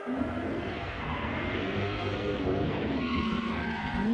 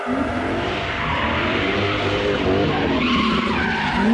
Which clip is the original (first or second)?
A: second